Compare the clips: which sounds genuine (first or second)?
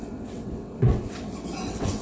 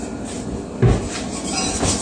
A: second